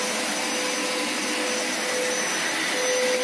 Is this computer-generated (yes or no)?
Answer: no